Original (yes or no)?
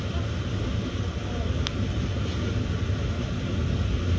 yes